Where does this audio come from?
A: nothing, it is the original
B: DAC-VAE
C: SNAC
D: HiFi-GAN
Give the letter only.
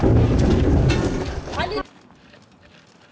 A